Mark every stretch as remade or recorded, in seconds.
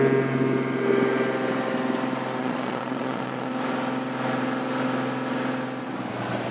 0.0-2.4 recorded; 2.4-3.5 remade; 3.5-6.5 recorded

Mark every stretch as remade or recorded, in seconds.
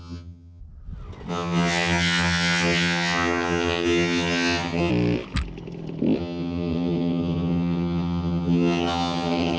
0.0-0.6 remade; 0.6-1.3 recorded; 1.3-4.9 remade; 4.9-6.2 recorded; 6.2-9.6 remade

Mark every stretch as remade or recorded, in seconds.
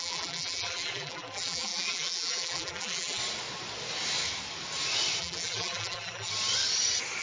0.0-3.2 remade; 3.2-5.2 recorded; 5.2-6.3 remade; 6.3-7.2 recorded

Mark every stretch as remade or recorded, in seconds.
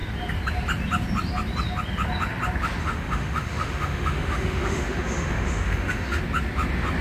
0.0-2.8 recorded; 2.8-6.2 remade; 6.2-7.0 recorded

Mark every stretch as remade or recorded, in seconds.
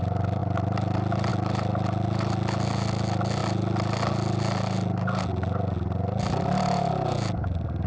0.0-7.9 recorded